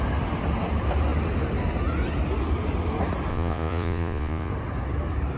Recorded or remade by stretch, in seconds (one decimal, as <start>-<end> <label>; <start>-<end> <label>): 0.0-3.3 recorded; 3.3-4.5 remade; 4.5-5.4 recorded